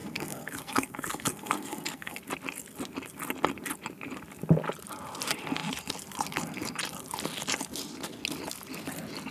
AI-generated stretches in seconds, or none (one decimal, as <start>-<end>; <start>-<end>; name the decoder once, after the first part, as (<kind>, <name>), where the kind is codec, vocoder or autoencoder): 0.0-2.2 (codec, SNAC)